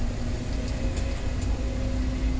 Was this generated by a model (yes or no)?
no